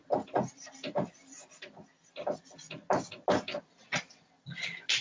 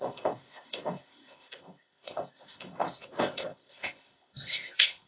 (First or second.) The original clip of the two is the first